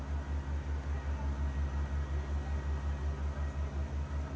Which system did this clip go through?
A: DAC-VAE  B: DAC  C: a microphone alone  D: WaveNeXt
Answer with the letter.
C